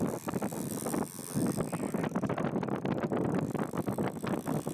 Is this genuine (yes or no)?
yes